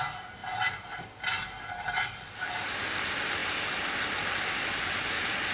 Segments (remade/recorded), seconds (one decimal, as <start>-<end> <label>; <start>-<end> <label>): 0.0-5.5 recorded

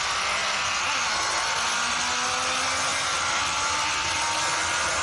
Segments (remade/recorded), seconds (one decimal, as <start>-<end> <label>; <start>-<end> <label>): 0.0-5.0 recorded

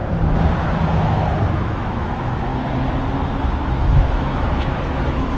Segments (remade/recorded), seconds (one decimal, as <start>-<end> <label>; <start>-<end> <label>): 0.0-1.5 recorded; 1.5-2.5 remade; 2.5-3.7 recorded; 3.7-5.4 remade

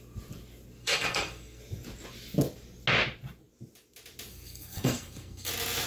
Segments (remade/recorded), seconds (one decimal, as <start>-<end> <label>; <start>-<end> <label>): 0.0-0.8 recorded; 0.8-1.6 remade; 1.6-4.3 recorded; 4.3-5.5 remade; 5.5-5.9 recorded

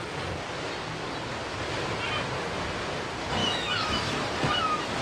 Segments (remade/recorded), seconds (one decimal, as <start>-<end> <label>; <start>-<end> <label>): 0.0-3.4 recorded; 3.4-4.1 remade; 4.1-5.0 recorded

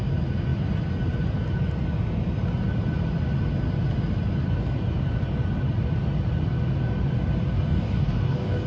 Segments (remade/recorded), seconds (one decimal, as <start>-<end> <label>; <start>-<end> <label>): 0.0-7.7 recorded; 7.7-8.7 remade